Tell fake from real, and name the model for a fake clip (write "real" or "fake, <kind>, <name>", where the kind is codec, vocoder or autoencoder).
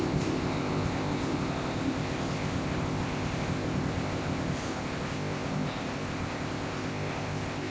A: fake, codec, ZipCodec